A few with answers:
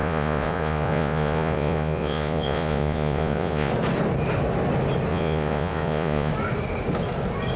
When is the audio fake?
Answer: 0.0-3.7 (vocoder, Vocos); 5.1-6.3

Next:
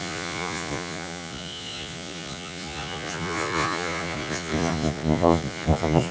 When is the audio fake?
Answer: 0.0-6.1 (vocoder, Vocos)

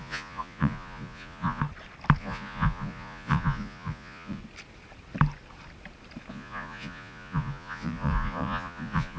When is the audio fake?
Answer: 0.0-1.6 (vocoder, Vocos); 2.2-4.4; 6.3-9.2

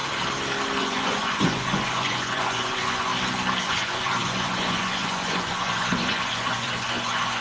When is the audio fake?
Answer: 0.8-3.1 (vocoder, Vocos); 3.6-7.4

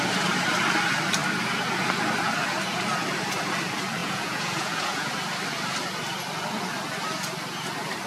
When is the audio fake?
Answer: 4.0-5.1 (vocoder, Vocos)

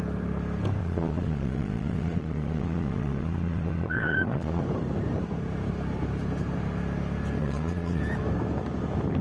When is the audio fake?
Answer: 0.8-4.6 (vocoder, Vocos); 7.4-8.0

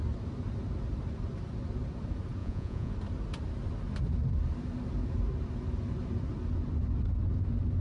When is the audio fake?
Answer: 2.4-2.9 (vocoder, Vocos)